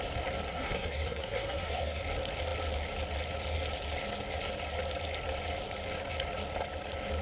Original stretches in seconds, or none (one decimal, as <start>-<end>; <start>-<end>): 0.0-0.5; 2.0-7.2